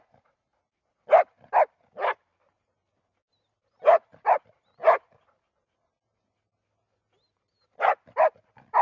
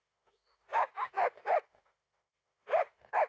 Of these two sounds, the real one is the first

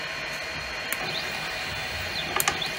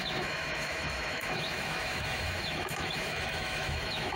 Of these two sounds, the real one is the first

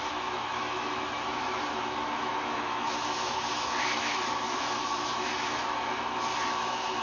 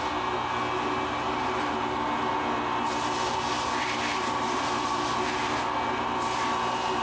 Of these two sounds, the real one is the second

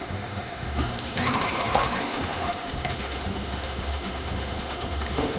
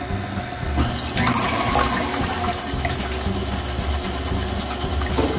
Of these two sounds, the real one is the second